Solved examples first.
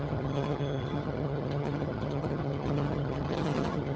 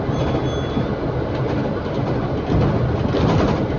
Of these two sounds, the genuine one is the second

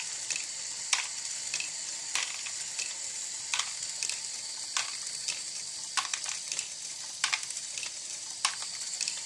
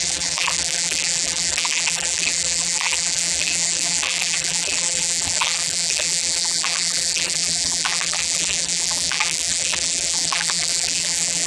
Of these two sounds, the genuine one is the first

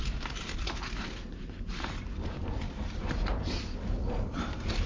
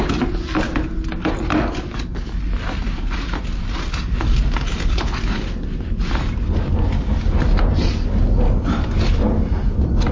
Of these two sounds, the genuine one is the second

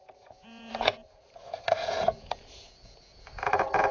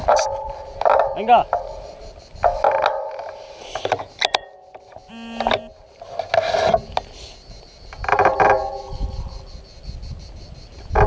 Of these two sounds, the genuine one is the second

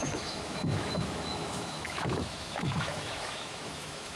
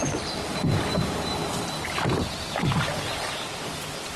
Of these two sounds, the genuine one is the second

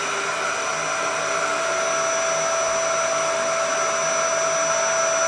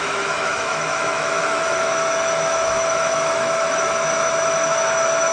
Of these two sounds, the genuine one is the first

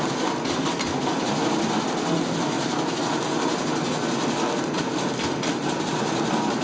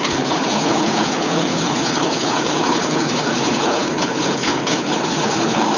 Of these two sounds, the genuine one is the first